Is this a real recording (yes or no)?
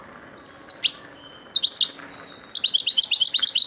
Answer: yes